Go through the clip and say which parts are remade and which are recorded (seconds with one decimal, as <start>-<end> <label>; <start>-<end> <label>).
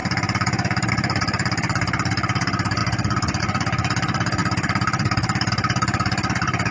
0.0-0.9 recorded; 0.9-2.8 remade; 2.8-3.4 recorded; 3.4-6.7 remade